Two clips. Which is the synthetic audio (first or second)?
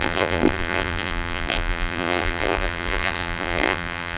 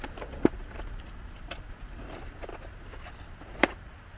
first